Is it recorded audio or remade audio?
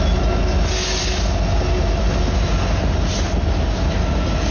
recorded